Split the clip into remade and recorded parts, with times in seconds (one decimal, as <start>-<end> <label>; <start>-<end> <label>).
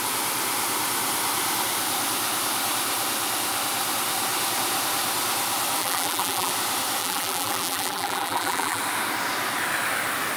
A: 0.0-5.8 recorded; 5.8-6.5 remade; 6.5-7.0 recorded; 7.0-8.8 remade; 8.8-10.4 recorded